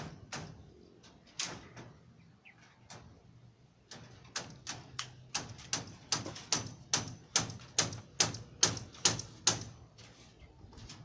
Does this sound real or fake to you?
real